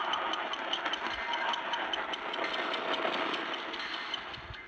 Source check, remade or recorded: recorded